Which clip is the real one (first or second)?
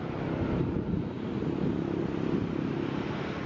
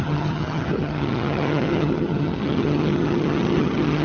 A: first